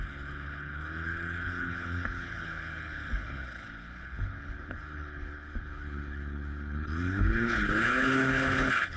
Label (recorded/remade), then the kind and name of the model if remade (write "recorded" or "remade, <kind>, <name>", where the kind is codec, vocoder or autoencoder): remade, codec, HILCodec